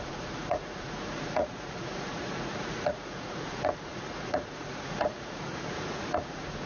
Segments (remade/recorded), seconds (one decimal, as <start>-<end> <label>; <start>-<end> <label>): 0.0-6.7 remade